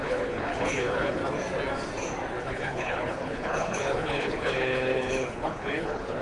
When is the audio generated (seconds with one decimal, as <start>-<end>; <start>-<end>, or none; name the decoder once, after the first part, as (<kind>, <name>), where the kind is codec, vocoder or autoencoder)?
0.0-1.2 (codec, HILCodec); 2.4-6.2